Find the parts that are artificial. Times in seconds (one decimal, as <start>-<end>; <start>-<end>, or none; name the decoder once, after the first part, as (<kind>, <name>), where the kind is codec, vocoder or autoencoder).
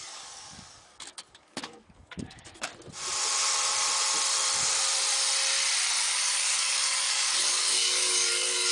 0.0-2.7 (codec, DAC); 6.0-8.7